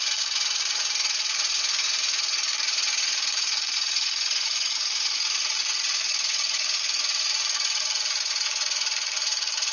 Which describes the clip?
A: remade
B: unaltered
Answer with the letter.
A